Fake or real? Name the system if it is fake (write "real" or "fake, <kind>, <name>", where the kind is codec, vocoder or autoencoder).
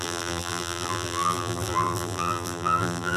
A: fake, vocoder, BigVGAN v2